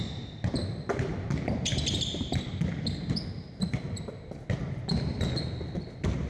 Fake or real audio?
real